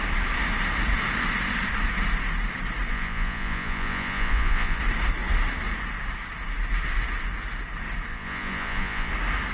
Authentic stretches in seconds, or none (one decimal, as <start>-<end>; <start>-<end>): 0.0-2.9; 4.8-8.1; 9.1-9.5